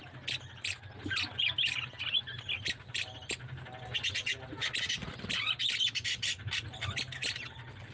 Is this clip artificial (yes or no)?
no